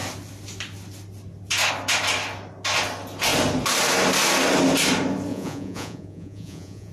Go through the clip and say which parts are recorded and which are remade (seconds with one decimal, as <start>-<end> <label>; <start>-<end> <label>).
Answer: 0.0-5.3 recorded; 5.3-6.9 remade

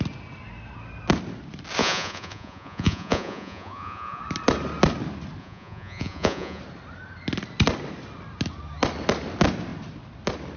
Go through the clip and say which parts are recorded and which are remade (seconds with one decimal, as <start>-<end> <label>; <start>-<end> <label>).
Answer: 0.0-1.8 recorded; 1.8-4.2 remade; 4.2-5.4 recorded; 5.4-6.6 remade; 6.6-10.6 recorded